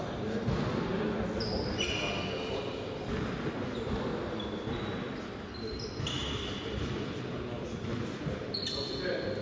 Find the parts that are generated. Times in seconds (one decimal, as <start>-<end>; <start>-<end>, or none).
0.0-0.9; 3.3-4.1; 5.2-6.2; 6.7-9.4